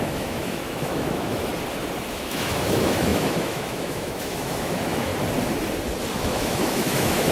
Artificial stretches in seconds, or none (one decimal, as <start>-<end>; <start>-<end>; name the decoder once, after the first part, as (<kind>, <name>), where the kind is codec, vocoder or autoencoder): 0.0-1.5 (autoencoder, DAC-VAE); 2.1-5.1; 6.1-7.3